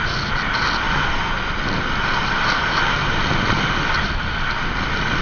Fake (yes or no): no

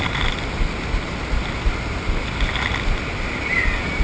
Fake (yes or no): no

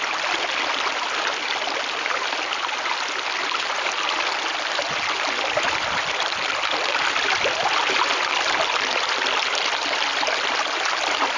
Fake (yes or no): no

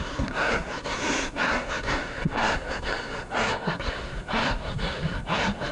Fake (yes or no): yes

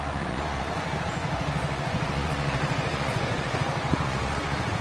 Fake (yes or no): yes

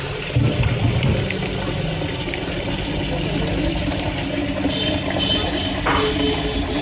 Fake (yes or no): no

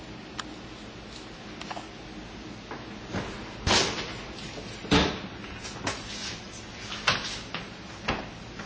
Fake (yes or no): no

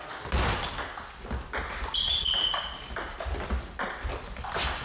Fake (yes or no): no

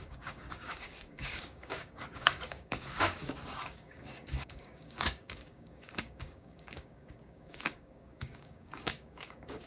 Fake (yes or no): yes